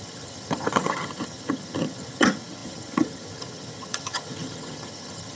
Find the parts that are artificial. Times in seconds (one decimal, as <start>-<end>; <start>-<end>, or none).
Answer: 0.0-5.4